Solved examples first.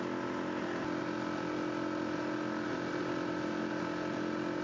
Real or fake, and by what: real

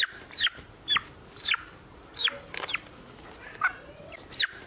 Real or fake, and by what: real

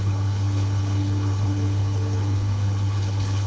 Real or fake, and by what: fake, codec, HILCodec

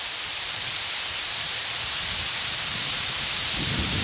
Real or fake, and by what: fake, vocoder, BigVGAN v2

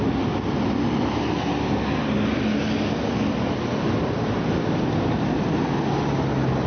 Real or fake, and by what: real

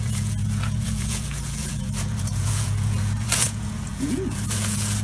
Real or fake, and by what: fake, vocoder, Vocos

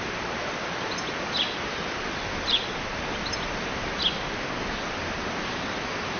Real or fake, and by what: real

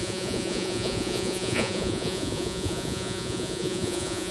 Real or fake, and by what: fake, vocoder, Vocos